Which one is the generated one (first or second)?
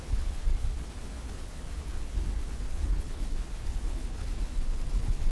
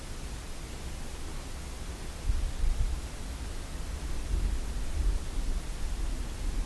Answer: first